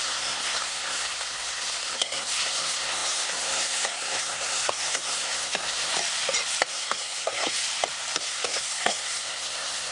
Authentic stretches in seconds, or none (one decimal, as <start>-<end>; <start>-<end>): 5.9-6.7; 7.6-8.2